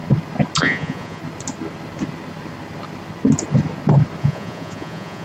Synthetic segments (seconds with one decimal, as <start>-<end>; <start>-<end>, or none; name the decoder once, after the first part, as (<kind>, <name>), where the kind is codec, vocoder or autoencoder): 0.6-1.2 (vocoder, Vocos); 4.2-5.2